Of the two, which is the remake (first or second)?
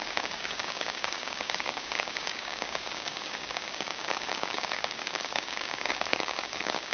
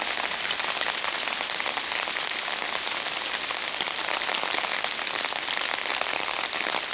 first